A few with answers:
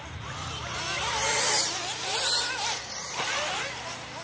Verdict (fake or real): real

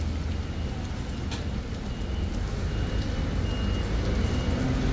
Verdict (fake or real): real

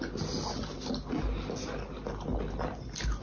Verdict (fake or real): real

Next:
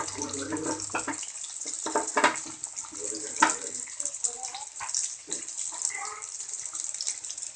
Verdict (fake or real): real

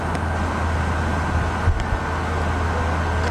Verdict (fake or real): real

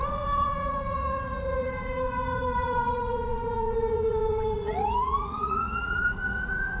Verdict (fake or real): fake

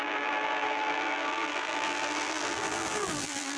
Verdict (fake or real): fake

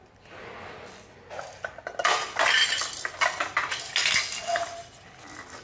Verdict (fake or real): real